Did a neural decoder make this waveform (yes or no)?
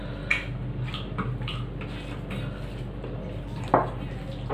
no